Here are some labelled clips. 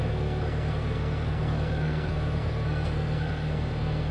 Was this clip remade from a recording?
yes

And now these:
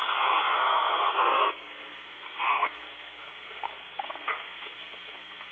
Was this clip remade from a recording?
yes